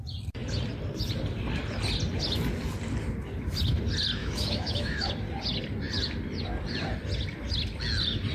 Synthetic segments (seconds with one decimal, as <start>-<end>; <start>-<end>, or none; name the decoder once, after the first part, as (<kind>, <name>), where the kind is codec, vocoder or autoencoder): 4.2-5.1 (autoencoder, DAC-VAE)